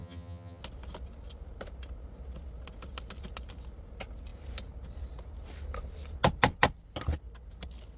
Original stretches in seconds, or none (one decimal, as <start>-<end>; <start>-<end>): 0.6-8.0